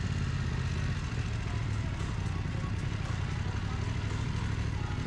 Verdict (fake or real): real